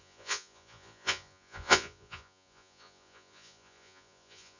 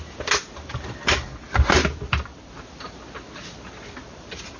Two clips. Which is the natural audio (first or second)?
second